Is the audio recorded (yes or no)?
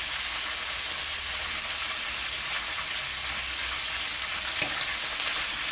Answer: yes